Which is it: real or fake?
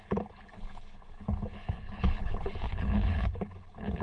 fake